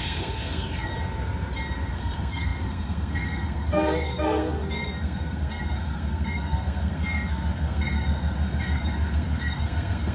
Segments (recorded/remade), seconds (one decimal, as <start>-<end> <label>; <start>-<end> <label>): 0.0-0.9 remade; 0.9-1.9 recorded; 1.9-10.1 remade